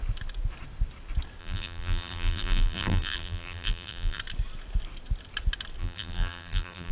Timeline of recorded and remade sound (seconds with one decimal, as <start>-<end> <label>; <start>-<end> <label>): 0.0-1.4 recorded; 1.4-4.2 remade; 4.2-5.8 recorded; 5.8-6.9 remade